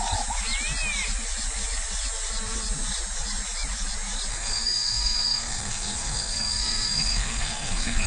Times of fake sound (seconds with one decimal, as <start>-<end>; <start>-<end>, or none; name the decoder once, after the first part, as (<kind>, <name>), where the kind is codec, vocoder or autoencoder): 4.3-8.1 (codec, SNAC)